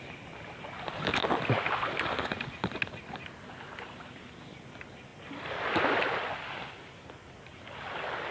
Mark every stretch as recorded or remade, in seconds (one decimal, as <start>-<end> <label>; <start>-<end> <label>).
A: 0.0-8.3 recorded